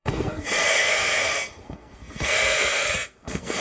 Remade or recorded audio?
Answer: remade